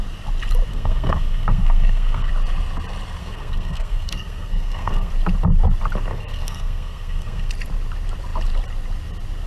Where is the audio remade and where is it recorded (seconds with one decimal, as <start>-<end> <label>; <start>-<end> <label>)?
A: 0.0-0.7 recorded; 0.7-2.3 remade; 2.3-3.2 recorded; 3.2-5.1 remade; 5.1-6.1 recorded; 6.1-7.5 remade; 7.5-9.5 recorded